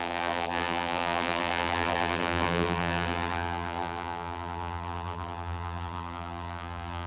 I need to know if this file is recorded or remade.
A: remade